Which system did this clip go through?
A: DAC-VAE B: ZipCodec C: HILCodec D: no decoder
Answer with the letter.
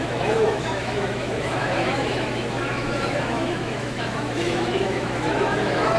A